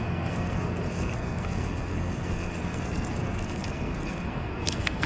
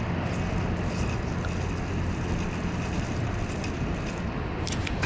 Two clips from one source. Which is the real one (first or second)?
second